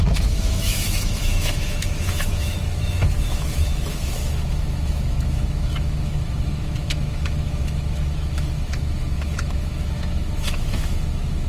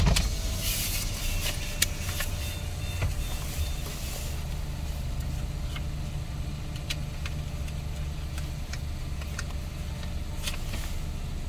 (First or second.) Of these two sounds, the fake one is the first